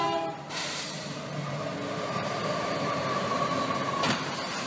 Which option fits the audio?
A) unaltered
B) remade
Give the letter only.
B